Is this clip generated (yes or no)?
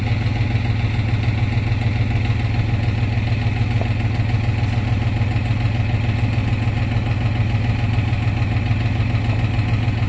no